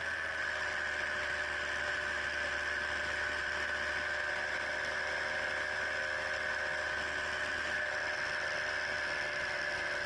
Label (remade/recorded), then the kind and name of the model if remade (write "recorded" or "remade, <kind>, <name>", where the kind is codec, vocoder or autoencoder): recorded